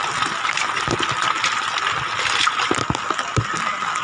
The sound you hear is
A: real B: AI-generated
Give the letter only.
A